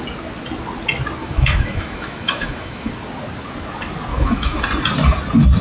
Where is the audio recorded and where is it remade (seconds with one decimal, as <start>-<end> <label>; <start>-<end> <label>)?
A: 0.0-1.2 recorded; 1.2-2.9 remade; 2.9-4.1 recorded; 4.1-4.6 remade; 4.6-5.6 recorded